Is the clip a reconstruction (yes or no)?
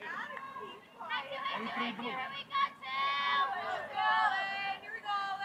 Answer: no